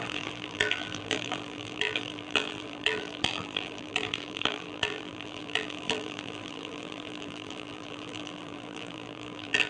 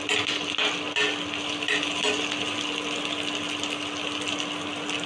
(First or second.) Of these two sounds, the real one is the second